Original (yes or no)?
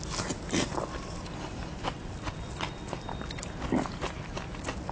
yes